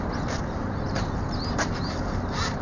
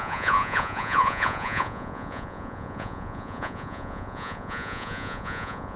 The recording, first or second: first